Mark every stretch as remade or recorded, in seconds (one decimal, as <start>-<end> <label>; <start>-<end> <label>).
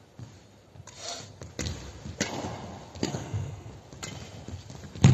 0.0-3.1 recorded; 3.1-3.7 remade; 3.7-5.1 recorded